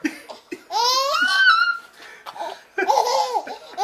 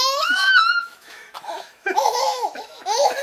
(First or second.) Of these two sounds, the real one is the first